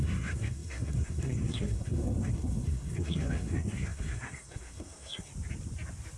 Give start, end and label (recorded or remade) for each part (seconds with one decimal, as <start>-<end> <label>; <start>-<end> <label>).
0.0-5.3 remade; 5.3-6.2 recorded